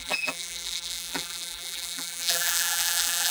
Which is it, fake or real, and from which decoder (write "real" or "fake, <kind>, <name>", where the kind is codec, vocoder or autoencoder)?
fake, vocoder, BigVGAN v2